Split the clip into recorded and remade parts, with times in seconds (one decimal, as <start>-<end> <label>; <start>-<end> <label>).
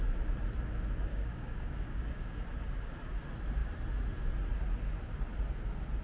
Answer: 0.0-1.1 recorded; 1.1-2.4 remade; 2.4-6.0 recorded